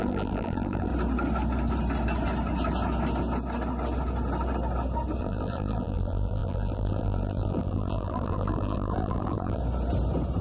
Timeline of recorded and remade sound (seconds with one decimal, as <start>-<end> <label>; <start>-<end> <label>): 0.0-0.9 remade; 0.9-5.2 recorded; 5.2-9.6 remade; 9.6-10.4 recorded